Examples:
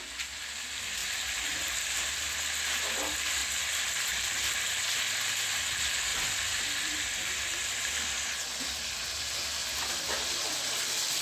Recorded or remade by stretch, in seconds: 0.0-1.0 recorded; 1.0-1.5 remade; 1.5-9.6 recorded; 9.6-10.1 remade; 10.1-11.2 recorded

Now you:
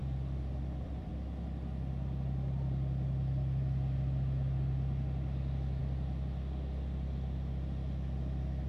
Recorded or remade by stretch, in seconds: 0.0-1.1 remade; 1.1-8.7 recorded

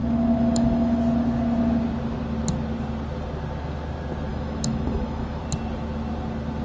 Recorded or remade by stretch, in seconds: 0.0-1.0 remade; 1.0-4.3 recorded; 4.3-5.4 remade; 5.4-6.6 recorded

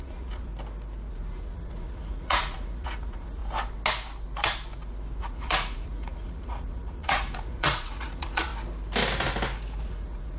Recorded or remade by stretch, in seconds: 0.0-0.5 remade; 0.5-1.1 recorded; 1.1-3.4 remade; 3.4-5.2 recorded; 5.2-8.5 remade; 8.5-9.8 recorded; 9.8-10.4 remade

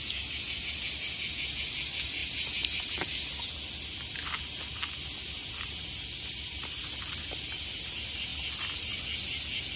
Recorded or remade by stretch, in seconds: 0.0-9.8 recorded

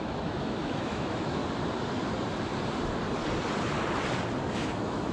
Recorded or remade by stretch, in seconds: 0.0-1.4 remade; 1.4-4.5 recorded; 4.5-5.1 remade

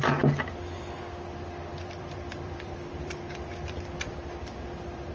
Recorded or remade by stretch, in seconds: 0.0-1.7 recorded; 1.7-5.1 remade

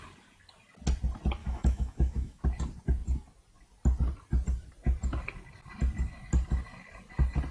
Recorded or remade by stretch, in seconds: 0.0-1.4 recorded; 1.4-2.4 remade; 2.4-7.5 recorded